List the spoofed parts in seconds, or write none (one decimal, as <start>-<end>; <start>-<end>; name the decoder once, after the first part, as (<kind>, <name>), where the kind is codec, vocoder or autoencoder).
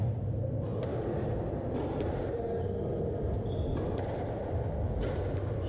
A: none